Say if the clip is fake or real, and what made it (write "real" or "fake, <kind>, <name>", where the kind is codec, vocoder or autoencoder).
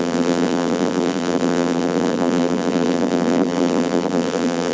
fake, vocoder, BigVGAN v2